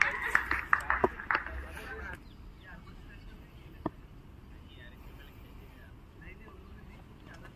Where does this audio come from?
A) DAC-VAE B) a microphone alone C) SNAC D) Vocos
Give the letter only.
B